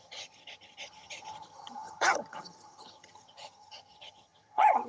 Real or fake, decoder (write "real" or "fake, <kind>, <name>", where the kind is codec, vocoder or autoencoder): fake, vocoder, HiFi-GAN